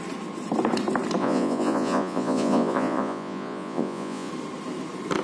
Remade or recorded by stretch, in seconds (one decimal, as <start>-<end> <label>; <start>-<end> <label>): 0.0-1.2 recorded; 1.2-4.3 remade; 4.3-5.2 recorded